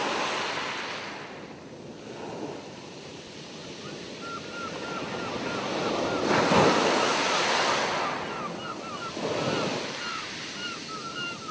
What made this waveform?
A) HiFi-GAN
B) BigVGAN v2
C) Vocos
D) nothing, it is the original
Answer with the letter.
D